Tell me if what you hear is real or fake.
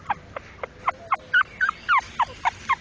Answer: real